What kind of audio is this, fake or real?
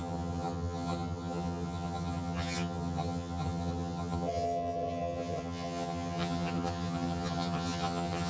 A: fake